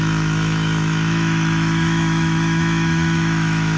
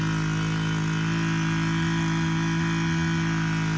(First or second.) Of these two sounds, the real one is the second